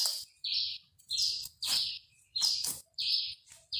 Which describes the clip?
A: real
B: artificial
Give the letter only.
B